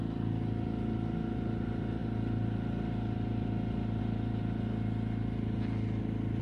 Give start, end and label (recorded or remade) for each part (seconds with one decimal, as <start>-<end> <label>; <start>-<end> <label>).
0.0-6.4 recorded